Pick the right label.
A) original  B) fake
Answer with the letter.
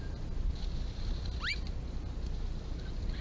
A